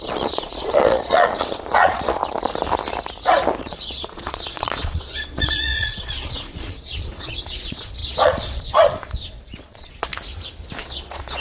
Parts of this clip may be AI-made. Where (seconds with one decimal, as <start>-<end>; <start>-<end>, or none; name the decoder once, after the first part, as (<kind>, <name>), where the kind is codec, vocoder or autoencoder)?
0.0-2.2 (vocoder, Vocos); 3.6-10.1; 10.8-11.4